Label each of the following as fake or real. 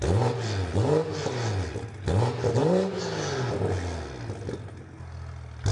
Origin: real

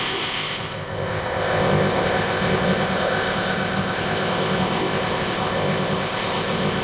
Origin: fake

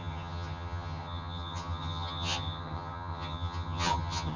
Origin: fake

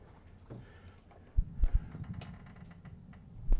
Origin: real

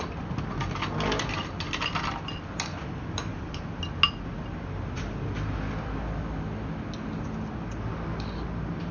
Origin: real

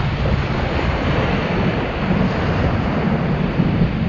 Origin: real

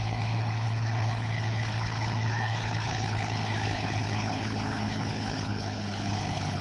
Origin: fake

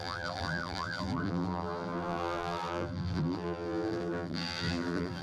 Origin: fake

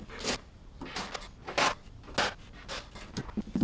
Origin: real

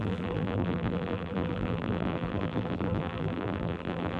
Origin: fake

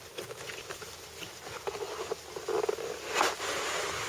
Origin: real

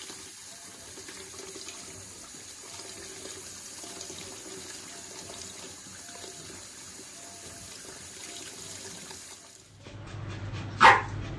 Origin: real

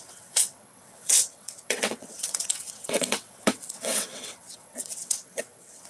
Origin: fake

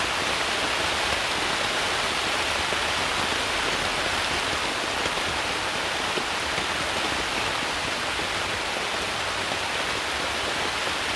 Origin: real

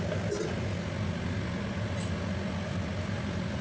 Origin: real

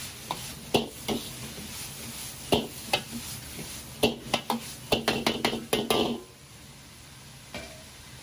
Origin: real